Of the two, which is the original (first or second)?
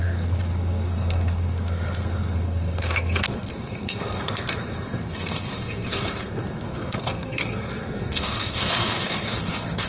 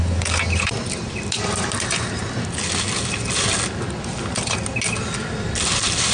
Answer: second